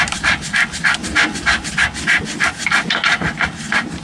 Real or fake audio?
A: real